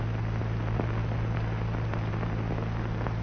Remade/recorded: recorded